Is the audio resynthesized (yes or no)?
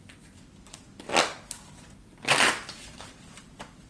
no